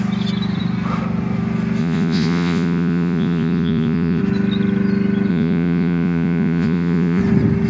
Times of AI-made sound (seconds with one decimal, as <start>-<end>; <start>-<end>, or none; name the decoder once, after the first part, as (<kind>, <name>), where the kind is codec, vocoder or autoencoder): 1.8-4.2 (vocoder, Vocos); 5.3-7.2